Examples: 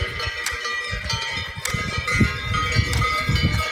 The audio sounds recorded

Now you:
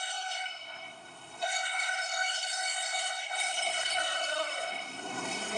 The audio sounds remade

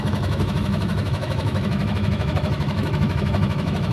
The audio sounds remade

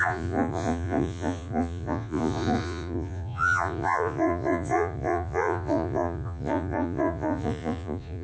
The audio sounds remade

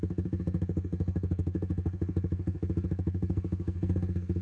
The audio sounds remade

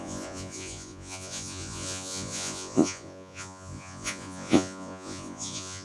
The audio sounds remade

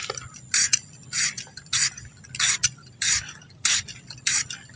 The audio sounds recorded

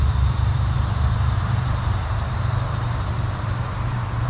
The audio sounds remade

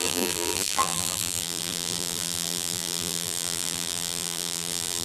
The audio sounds remade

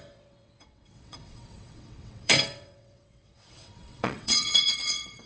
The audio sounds remade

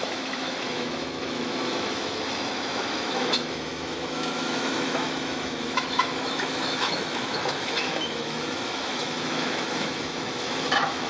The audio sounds remade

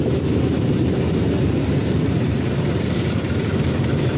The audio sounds remade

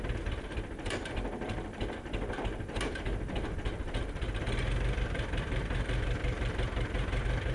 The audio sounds recorded